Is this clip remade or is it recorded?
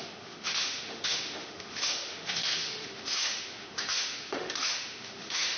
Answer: remade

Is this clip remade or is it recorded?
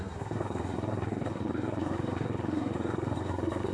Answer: remade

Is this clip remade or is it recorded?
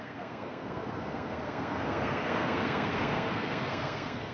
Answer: remade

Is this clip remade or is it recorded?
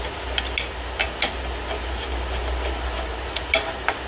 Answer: recorded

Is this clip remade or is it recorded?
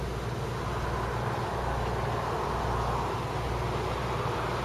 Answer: recorded